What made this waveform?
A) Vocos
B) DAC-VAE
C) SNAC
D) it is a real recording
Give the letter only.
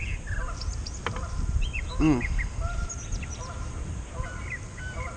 D